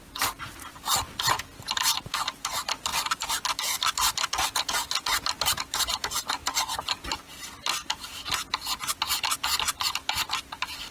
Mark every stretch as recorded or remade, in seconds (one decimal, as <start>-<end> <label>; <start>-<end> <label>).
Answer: 0.0-10.9 recorded